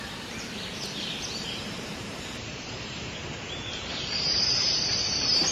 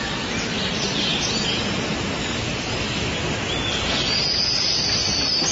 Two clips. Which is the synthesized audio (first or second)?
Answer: first